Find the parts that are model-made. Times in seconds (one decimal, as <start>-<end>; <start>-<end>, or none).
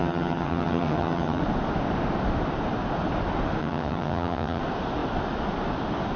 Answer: 0.0-1.4; 3.6-4.6